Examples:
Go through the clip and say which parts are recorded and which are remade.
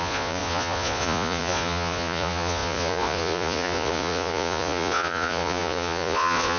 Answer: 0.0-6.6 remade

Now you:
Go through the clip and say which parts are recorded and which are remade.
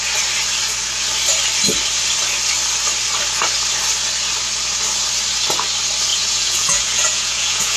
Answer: 0.0-6.1 recorded; 6.1-7.8 remade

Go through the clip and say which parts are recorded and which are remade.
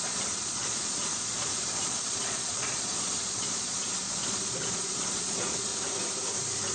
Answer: 0.0-5.7 remade; 5.7-6.7 recorded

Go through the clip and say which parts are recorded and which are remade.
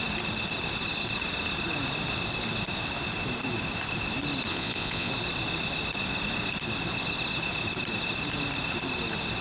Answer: 0.0-4.5 recorded; 4.5-5.1 remade; 5.1-9.4 recorded